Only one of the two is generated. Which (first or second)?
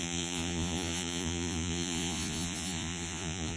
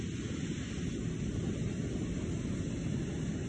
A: first